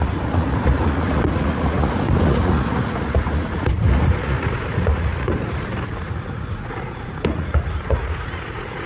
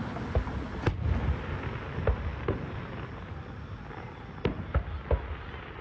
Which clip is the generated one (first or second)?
first